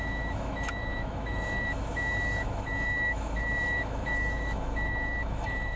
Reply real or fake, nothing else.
fake